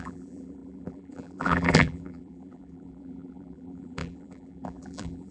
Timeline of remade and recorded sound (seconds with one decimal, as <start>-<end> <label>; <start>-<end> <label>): 0.0-5.3 remade